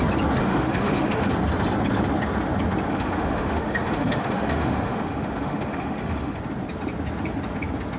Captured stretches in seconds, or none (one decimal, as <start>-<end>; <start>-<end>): 0.0-0.4; 1.3-2.9; 6.4-8.0